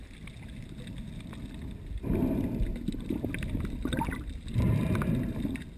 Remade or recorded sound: recorded